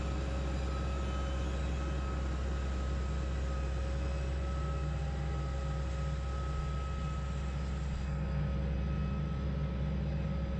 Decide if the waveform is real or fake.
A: real